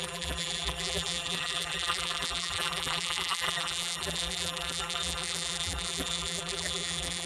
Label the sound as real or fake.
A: fake